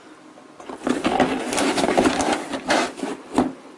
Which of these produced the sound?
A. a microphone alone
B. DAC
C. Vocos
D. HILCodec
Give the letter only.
A